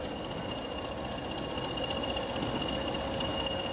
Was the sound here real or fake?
real